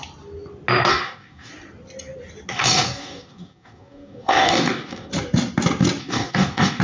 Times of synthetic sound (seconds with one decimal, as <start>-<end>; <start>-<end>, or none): 0.9-1.5; 2.5-5.1; 6.0-6.8